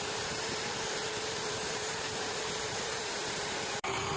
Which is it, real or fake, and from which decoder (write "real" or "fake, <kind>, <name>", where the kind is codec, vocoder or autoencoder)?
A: fake, vocoder, BigVGAN v2